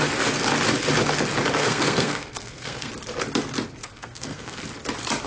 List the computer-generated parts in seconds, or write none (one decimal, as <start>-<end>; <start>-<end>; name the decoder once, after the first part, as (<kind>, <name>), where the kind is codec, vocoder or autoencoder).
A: 1.6-2.9 (codec, SNAC); 3.8-4.6